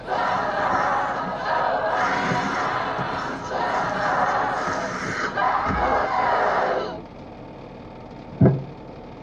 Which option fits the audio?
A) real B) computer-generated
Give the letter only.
A